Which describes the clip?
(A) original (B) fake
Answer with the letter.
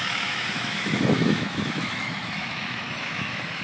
B